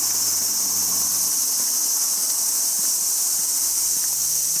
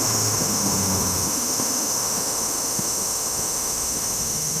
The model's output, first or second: second